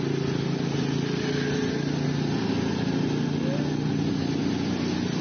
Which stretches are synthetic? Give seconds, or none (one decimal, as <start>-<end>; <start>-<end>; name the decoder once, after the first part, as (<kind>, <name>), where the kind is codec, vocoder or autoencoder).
none